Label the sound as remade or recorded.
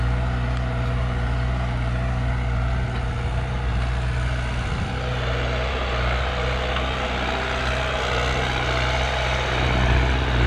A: recorded